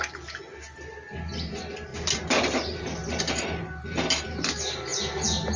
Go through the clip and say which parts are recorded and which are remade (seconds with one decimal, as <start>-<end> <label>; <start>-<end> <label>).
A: 0.0-5.6 recorded